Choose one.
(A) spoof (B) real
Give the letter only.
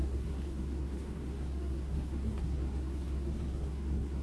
A